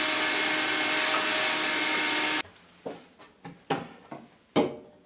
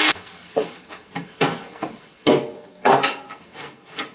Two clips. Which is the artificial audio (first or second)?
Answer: second